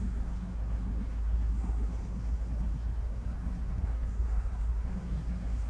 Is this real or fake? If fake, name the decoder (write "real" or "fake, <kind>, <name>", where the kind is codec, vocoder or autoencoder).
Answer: fake, codec, SNAC